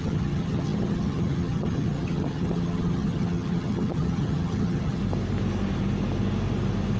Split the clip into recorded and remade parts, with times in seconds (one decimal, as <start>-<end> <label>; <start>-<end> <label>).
0.0-5.0 remade; 5.0-7.0 recorded